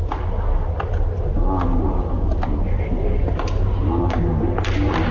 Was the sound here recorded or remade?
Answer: recorded